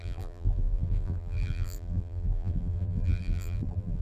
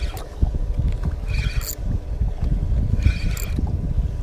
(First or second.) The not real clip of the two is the first